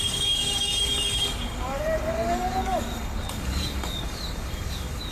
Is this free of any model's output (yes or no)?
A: no